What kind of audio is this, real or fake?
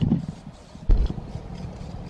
fake